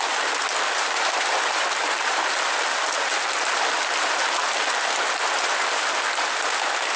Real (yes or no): yes